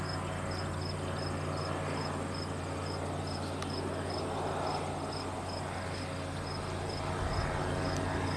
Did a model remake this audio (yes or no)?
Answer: no